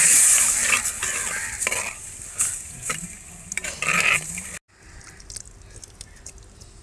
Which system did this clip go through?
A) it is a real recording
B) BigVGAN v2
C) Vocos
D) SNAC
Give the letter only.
A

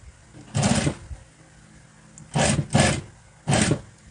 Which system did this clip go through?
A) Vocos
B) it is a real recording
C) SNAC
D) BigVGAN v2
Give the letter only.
B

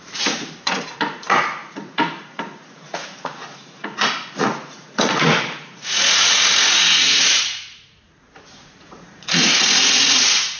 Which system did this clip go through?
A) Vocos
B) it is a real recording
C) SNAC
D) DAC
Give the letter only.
A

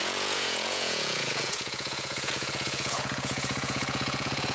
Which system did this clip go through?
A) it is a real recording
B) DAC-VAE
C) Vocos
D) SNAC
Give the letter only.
C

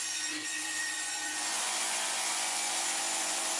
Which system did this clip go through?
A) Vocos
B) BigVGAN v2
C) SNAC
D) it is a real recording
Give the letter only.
A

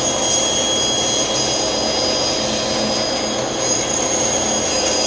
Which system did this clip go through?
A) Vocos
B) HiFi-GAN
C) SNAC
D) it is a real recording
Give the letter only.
D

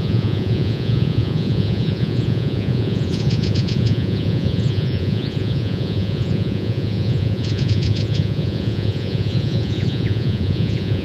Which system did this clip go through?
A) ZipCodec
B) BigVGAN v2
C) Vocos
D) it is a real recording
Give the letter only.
C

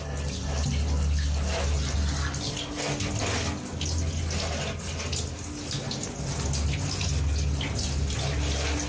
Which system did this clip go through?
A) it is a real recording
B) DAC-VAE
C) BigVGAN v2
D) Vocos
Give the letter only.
A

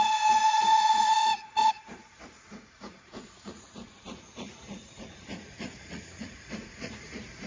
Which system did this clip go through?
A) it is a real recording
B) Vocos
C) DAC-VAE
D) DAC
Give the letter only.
B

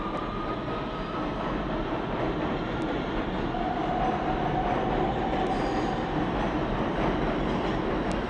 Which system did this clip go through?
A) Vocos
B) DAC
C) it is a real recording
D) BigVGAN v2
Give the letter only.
C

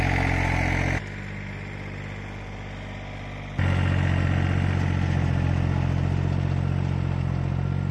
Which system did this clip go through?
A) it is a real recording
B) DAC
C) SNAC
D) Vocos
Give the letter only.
A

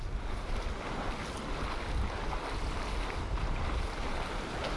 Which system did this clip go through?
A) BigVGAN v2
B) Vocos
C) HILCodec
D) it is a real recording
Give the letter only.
D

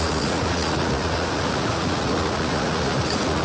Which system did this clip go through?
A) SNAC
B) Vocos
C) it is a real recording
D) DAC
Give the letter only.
B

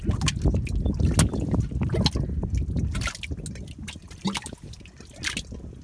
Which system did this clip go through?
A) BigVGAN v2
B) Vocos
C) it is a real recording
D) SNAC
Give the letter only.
C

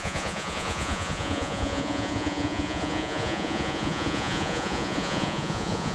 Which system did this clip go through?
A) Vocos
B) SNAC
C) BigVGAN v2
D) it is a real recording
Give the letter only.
A